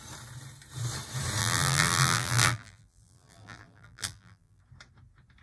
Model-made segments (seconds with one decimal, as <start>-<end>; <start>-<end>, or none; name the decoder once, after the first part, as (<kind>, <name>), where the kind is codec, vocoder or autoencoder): 1.4-4.6 (vocoder, BigVGAN v2)